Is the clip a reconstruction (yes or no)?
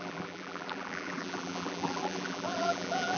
yes